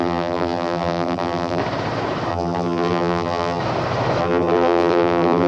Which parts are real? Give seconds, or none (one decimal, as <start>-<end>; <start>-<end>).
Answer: 1.6-2.3; 3.6-4.2